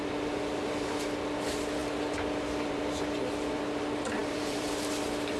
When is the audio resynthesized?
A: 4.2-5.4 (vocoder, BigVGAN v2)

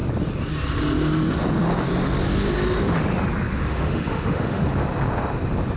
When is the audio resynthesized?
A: 3.6-4.6 (autoencoder, DAC-VAE)

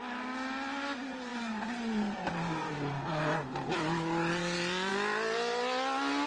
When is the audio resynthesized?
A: 1.3-3.2 (vocoder, BigVGAN v2)

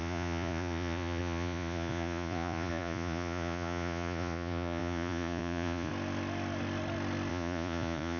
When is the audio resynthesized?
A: 0.0-5.9 (vocoder, Vocos); 7.3-8.2

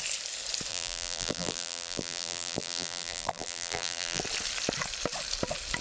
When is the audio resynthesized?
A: 0.7-4.2 (vocoder, BigVGAN v2)

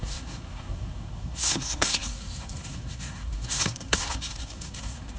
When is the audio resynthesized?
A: 0.0-5.2 (codec, SNAC)

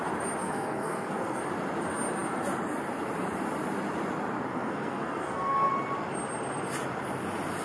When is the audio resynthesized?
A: 0.4-1.4 (codec, SNAC); 4.5-5.7

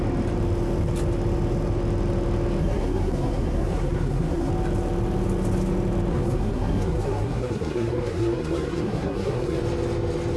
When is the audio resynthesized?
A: 2.6-4.5 (codec, SNAC); 6.1-9.6